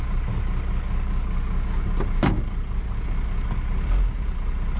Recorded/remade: recorded